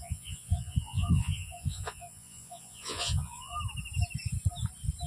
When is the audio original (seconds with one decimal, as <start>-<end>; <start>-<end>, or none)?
3.5-5.1